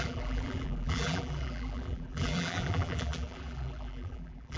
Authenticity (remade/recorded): remade